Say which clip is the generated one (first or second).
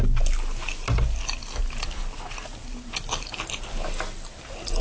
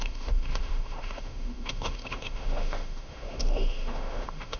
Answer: second